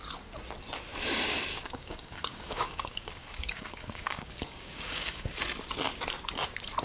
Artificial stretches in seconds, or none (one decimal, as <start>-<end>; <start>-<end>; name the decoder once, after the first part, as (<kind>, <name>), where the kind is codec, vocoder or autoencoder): 1.5-5.4 (codec, DAC)